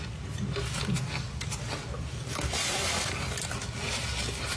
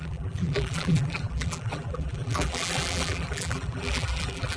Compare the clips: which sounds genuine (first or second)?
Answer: first